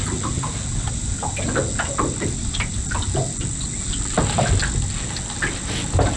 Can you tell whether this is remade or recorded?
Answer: recorded